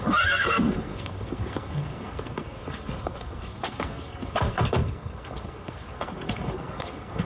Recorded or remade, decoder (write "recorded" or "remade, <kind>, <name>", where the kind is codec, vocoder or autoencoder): remade, codec, SNAC